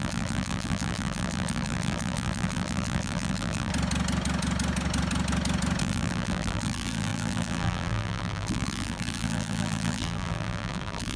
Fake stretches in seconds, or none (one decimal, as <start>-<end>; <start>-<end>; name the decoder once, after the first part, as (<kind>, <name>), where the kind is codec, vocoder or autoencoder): 0.0-3.7 (vocoder, BigVGAN v2); 5.8-11.2